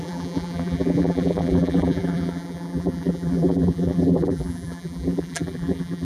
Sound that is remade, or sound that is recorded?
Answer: remade